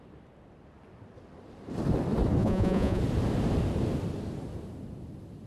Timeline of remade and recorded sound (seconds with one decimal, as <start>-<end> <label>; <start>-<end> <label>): 0.0-2.4 recorded; 2.4-3.0 remade; 3.0-5.5 recorded